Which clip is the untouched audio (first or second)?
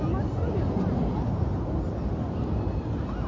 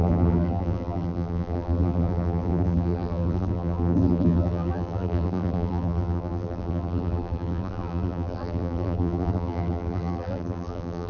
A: first